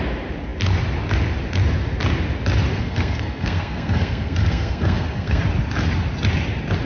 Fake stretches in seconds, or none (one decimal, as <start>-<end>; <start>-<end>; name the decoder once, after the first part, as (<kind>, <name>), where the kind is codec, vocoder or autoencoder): 2.7-5.4 (codec, SNAC)